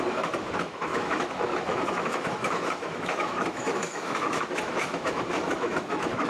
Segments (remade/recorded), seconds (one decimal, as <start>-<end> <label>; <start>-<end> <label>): 0.0-6.3 remade